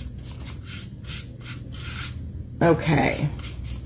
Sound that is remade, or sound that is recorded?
recorded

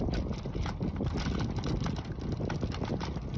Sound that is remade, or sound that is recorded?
recorded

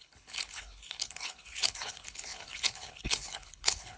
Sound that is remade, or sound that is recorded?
remade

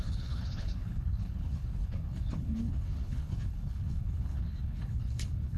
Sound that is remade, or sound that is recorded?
remade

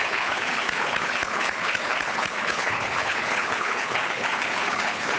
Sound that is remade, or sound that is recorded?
remade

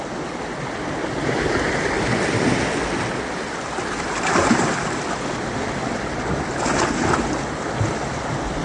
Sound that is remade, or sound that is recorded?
recorded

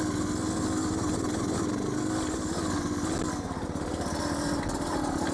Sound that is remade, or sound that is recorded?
recorded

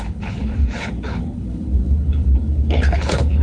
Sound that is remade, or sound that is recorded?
remade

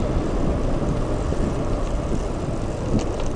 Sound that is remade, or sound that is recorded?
recorded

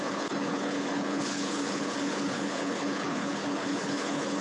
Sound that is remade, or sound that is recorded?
remade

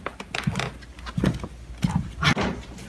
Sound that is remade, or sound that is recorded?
recorded